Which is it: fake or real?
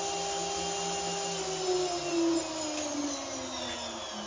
real